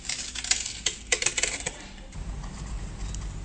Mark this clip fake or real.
real